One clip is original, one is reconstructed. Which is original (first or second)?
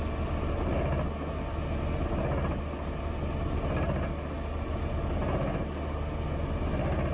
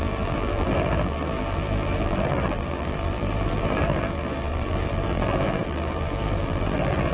first